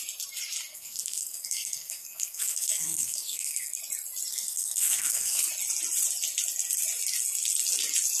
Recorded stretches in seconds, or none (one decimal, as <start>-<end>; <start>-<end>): 0.0-0.7; 3.8-4.3; 5.5-8.2